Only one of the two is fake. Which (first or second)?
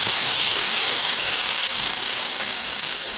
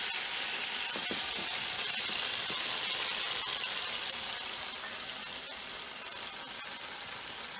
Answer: first